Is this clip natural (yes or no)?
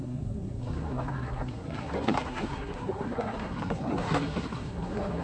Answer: no